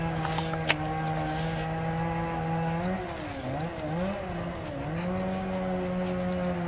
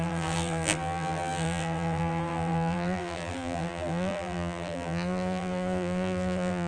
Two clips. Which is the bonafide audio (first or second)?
first